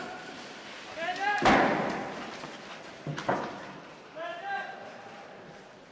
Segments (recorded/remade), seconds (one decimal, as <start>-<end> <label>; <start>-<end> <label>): 0.0-5.9 recorded

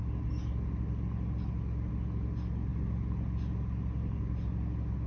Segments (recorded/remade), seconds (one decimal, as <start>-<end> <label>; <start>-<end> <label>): 0.0-5.1 recorded

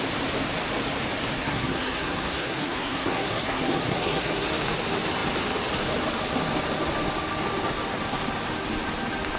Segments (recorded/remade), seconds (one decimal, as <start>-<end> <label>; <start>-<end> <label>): 0.0-1.4 recorded; 1.4-4.5 remade; 4.5-9.4 recorded

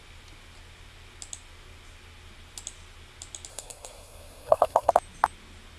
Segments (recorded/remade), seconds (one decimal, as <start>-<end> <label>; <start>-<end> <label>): 0.0-3.5 recorded; 3.5-4.9 remade; 4.9-5.8 recorded

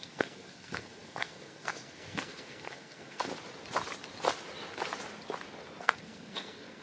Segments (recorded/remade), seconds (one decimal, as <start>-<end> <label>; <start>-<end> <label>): 0.0-3.3 remade; 3.3-5.8 recorded; 5.8-6.8 remade

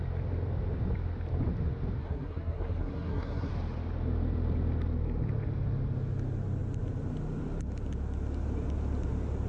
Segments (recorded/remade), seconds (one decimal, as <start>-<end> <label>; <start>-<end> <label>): 0.0-2.0 recorded; 2.0-3.5 remade; 3.5-9.5 recorded

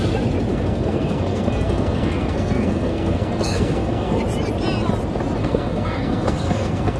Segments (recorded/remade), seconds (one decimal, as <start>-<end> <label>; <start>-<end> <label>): 0.0-0.5 recorded; 0.5-4.2 remade; 4.2-5.4 recorded; 5.4-7.0 remade

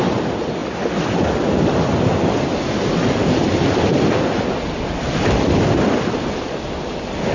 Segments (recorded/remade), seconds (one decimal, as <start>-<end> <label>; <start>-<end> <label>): 0.0-7.3 recorded